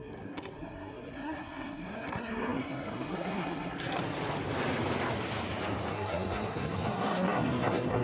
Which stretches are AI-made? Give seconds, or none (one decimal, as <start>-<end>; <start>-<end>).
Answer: 0.0-4.0; 5.9-8.0